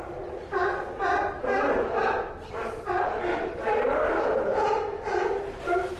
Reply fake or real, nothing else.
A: real